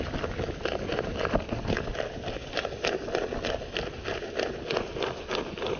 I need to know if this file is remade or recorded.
recorded